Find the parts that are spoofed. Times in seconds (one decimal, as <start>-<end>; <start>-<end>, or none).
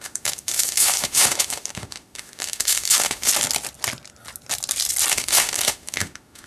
0.0-3.3; 5.1-6.5